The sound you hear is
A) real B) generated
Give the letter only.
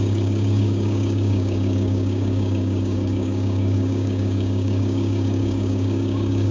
B